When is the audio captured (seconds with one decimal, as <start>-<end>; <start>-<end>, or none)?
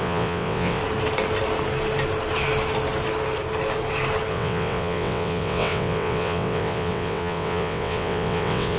0.8-4.3